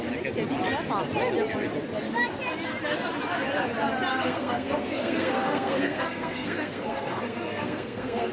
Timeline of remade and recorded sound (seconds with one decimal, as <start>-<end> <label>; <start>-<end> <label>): 0.0-4.1 recorded; 4.1-8.3 remade